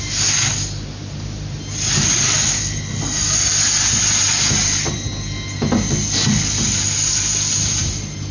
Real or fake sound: real